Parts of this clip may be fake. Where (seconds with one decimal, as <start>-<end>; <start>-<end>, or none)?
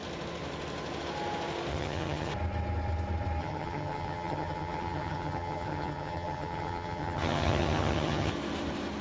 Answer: 1.7-2.3; 3.4-8.3